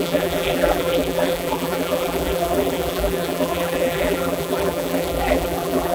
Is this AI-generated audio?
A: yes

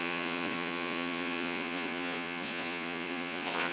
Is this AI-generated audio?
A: yes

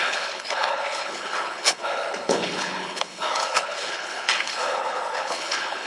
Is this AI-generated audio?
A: yes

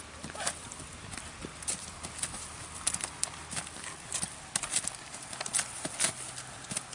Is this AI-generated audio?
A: no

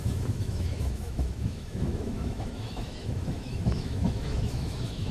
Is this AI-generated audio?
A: yes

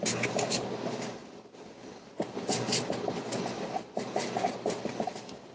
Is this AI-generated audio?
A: no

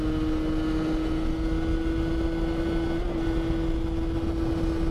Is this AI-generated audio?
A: no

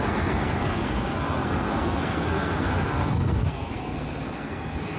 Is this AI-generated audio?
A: yes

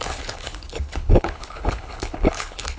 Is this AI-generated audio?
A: yes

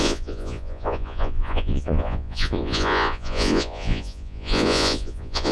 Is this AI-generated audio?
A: yes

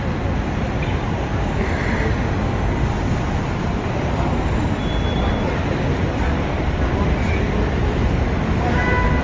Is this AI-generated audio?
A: no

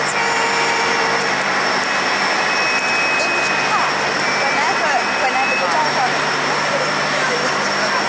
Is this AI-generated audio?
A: no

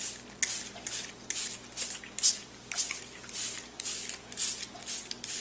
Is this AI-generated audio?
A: no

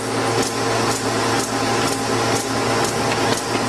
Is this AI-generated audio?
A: no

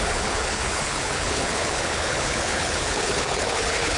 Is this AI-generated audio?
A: yes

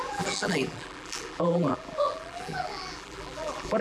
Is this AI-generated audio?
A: yes